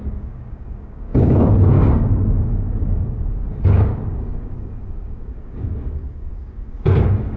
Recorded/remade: remade